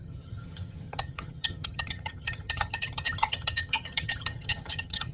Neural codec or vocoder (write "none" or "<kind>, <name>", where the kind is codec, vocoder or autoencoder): vocoder, HiFi-GAN